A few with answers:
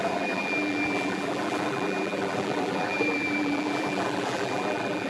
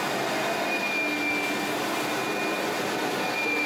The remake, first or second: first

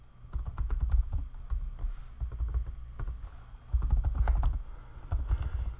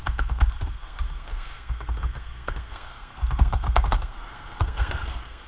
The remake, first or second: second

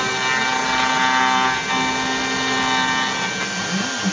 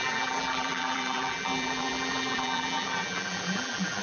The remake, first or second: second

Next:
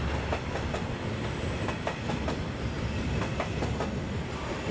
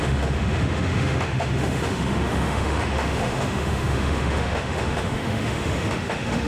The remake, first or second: second